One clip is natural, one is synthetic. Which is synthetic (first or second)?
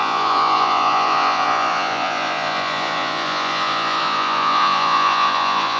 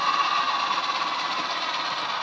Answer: first